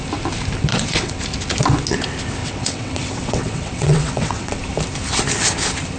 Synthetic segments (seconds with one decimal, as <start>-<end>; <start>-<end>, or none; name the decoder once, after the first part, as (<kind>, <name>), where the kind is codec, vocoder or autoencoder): 0.7-1.2 (vocoder, WaveNeXt); 2.4-4.6

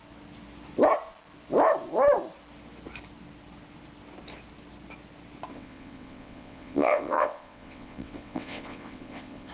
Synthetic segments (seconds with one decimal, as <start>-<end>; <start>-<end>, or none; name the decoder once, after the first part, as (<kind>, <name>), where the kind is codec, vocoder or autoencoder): 5.5-9.5 (vocoder, WaveNeXt)

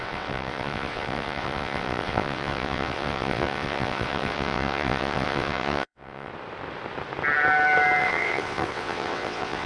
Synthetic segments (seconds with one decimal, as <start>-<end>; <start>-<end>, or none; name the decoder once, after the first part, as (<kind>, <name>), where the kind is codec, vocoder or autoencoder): 0.0-6.3 (vocoder, WaveNeXt); 8.0-9.7

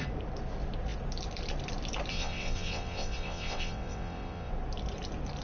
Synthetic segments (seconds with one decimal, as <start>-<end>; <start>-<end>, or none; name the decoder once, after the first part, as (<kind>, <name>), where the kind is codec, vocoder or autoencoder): 2.1-4.5 (vocoder, WaveNeXt)

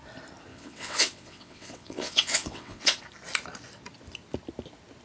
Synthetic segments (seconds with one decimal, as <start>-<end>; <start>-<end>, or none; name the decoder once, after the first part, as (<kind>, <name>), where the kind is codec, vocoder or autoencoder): 0.5-3.0 (vocoder, WaveNeXt)

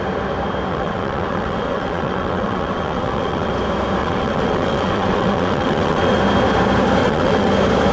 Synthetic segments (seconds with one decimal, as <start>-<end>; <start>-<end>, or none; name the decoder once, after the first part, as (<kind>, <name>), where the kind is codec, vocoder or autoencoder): 0.7-3.5 (vocoder, WaveNeXt); 4.0-6.2; 7.0-7.5